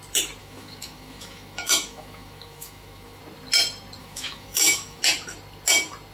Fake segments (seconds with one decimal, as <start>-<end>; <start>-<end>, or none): 0.4-3.2; 4.0-5.0